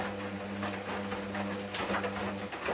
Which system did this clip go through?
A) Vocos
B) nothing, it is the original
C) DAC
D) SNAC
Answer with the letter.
B